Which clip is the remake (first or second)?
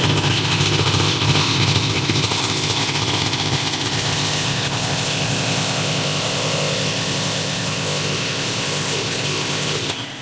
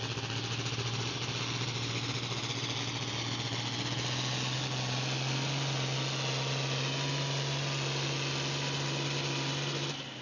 first